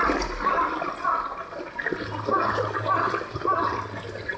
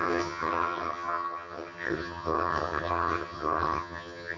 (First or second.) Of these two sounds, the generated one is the second